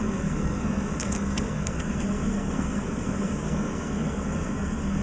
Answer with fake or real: fake